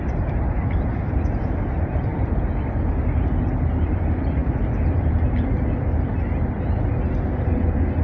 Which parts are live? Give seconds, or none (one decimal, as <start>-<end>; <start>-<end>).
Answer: 0.0-8.0